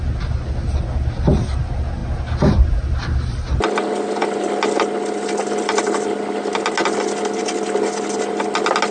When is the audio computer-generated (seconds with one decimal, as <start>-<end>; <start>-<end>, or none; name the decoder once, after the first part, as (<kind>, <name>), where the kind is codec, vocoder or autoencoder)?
none